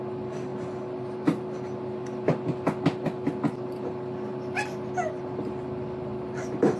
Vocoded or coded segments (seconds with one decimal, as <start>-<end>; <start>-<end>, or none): none